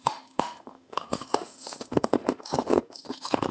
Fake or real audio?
fake